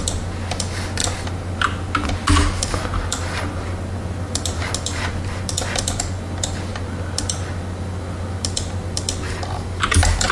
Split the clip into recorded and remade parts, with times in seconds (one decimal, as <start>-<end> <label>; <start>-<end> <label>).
0.0-10.3 recorded